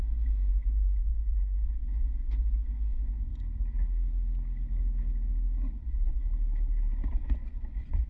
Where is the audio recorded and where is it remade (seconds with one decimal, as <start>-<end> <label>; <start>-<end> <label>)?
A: 0.0-3.3 remade; 3.3-5.7 recorded; 5.7-6.2 remade; 6.2-7.1 recorded; 7.1-8.1 remade